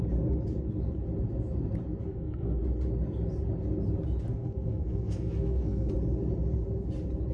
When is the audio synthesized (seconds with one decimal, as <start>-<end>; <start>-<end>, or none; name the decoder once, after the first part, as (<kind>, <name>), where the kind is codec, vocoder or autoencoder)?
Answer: 2.1-2.6 (codec, SNAC); 4.4-5.9